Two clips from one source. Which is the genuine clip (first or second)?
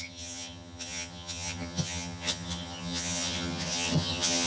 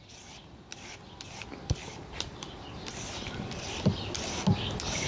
second